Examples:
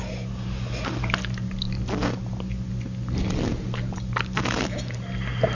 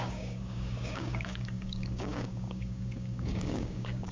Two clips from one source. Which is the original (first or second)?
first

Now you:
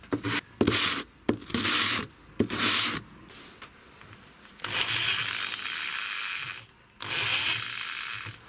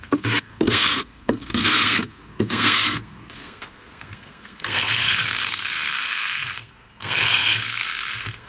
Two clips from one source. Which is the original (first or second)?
first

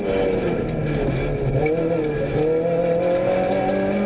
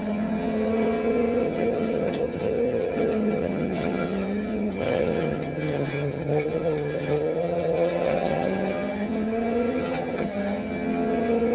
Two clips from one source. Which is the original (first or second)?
first